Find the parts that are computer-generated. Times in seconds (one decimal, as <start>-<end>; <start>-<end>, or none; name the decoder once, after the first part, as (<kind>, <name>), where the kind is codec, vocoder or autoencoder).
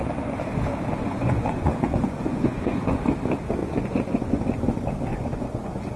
1.0-3.0 (vocoder, Vocos); 3.6-4.4; 5.1-6.0